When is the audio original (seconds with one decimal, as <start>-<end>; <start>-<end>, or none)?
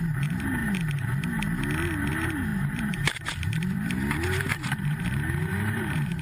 0.6-2.1